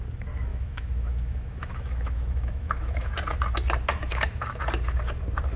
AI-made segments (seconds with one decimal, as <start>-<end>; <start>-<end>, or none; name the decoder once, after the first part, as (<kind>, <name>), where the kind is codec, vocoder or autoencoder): 0.5-3.1 (autoencoder, DAC-VAE); 4.0-4.6